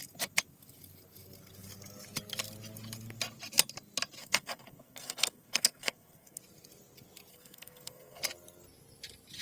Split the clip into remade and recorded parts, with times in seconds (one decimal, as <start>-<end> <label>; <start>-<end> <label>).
0.0-4.2 recorded; 4.2-6.4 remade; 6.4-7.3 recorded; 7.3-8.2 remade; 8.2-9.4 recorded